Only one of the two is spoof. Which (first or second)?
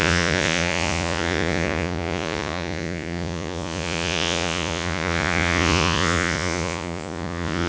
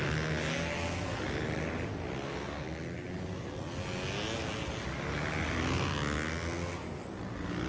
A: first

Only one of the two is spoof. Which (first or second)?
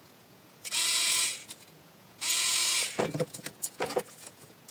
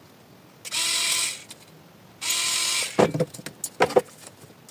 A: first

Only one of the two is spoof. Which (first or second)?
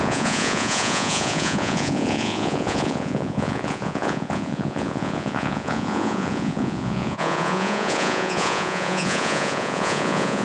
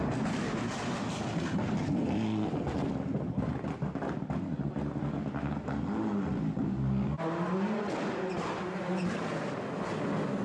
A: first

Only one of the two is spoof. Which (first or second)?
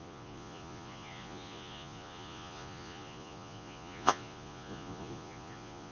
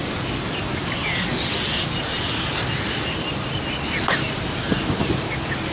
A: first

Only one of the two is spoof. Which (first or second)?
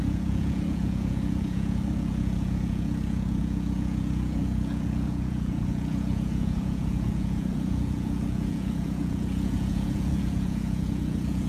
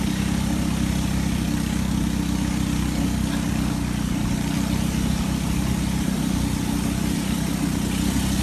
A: first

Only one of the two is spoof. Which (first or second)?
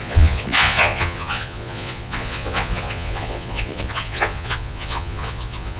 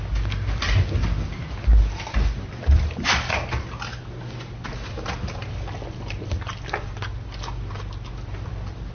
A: first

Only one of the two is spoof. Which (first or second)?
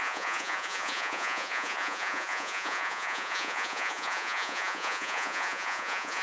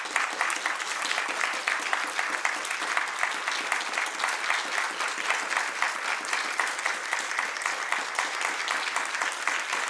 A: first